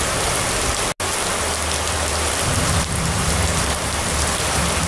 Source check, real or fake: real